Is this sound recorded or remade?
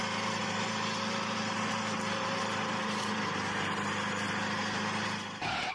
remade